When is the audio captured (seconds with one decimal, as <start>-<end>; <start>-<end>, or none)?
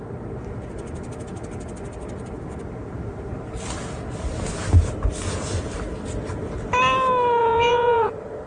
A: 0.0-7.4; 8.1-8.5